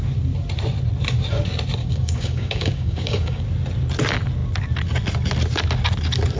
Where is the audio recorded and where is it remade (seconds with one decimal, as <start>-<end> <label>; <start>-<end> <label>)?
0.0-1.8 recorded; 1.8-3.4 remade; 3.4-6.4 recorded